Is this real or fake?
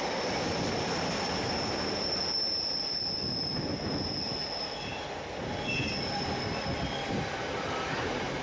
real